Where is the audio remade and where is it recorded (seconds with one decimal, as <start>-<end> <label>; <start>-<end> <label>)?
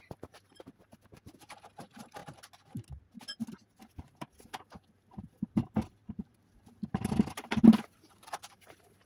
0.0-2.2 remade; 2.2-3.9 recorded; 3.9-9.1 remade